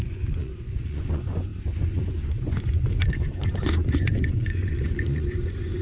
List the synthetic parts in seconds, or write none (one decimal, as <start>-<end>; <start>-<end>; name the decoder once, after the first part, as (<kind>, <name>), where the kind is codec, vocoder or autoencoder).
0.0-5.8 (vocoder, Vocos)